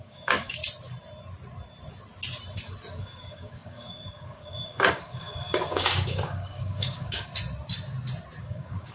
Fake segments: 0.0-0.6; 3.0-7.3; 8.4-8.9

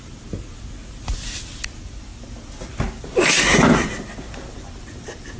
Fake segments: none

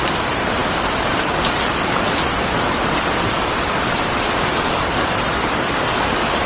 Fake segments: none

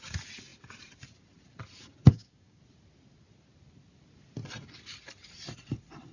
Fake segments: 2.1-2.6

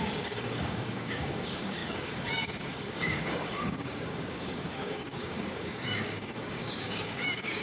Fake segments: 0.0-7.6

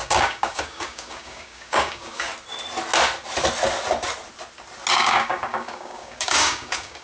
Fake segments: 0.0-2.3; 4.9-7.0

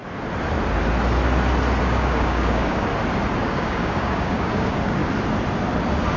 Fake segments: 1.8-2.9; 3.4-5.0

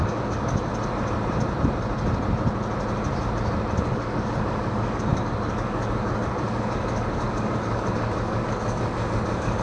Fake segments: 0.0-0.7; 3.8-9.6